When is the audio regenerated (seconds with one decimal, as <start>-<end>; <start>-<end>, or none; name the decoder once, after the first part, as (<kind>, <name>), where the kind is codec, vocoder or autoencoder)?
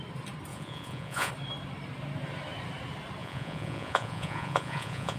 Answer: 0.5-1.3 (vocoder, Vocos); 3.2-5.2